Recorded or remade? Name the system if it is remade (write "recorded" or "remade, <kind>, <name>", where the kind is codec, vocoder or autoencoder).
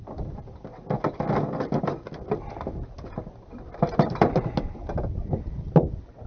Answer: recorded